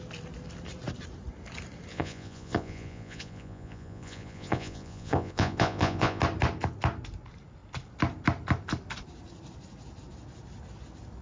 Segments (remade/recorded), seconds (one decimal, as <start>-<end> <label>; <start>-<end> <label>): 0.0-1.9 recorded; 1.9-6.2 remade; 6.2-11.2 recorded